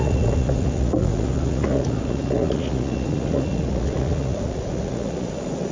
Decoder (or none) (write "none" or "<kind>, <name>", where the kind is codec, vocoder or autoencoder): vocoder, Vocos